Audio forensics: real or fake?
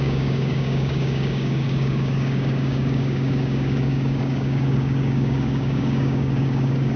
fake